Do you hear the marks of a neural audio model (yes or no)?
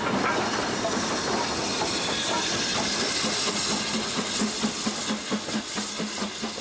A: no